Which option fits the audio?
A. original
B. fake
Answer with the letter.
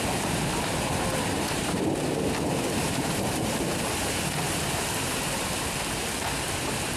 B